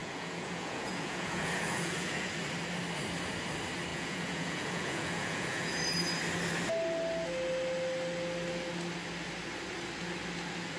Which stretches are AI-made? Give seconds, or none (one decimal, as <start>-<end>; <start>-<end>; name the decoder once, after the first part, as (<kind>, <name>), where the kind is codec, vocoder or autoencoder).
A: 0.0-2.3 (vocoder, Vocos); 3.9-5.8